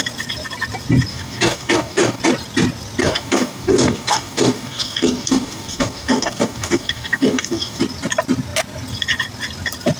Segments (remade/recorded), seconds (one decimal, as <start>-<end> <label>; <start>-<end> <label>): 0.0-1.1 recorded; 1.1-2.2 remade; 2.2-3.0 recorded; 3.0-7.8 remade; 7.8-10.0 recorded